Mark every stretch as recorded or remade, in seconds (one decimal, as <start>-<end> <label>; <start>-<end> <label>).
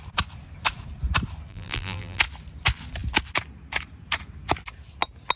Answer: 0.0-1.5 recorded; 1.5-2.2 remade; 2.2-5.4 recorded